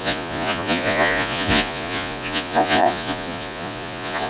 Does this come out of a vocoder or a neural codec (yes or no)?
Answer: yes